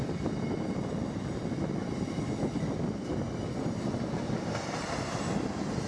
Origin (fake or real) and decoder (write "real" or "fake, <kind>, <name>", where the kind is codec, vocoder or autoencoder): real